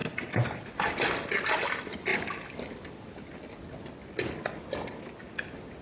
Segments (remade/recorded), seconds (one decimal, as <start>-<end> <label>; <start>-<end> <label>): 0.0-5.8 recorded